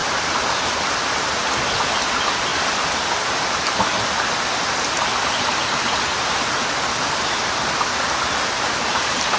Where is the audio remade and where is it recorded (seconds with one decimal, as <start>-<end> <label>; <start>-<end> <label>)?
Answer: 0.0-2.1 recorded; 2.1-2.5 remade; 2.5-3.5 recorded; 3.5-3.9 remade; 3.9-8.9 recorded; 8.9-9.4 remade